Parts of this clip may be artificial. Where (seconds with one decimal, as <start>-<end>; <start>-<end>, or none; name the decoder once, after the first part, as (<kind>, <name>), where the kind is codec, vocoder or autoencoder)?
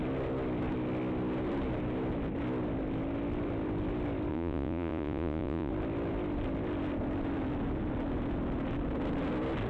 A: 4.3-5.7 (vocoder, Vocos)